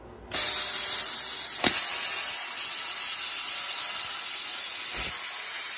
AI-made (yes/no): no